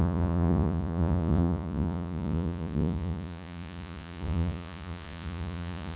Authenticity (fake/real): fake